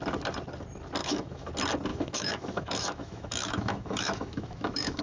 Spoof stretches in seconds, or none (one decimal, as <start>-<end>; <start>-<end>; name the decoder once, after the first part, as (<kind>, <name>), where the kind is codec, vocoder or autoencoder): 1.0-1.5 (autoencoder, DAC-VAE); 1.9-5.0

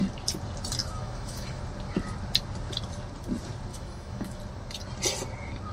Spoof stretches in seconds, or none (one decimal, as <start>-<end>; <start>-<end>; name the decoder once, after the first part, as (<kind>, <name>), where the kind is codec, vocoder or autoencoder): 0.8-1.6 (autoencoder, DAC-VAE); 3.7-4.4